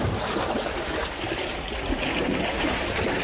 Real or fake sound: real